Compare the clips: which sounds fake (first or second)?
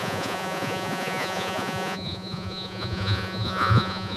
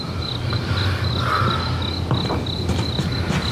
first